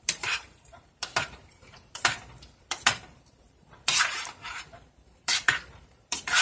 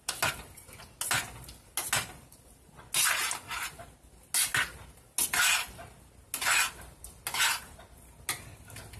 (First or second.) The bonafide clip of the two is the second